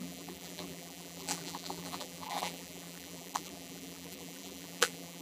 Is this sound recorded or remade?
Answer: remade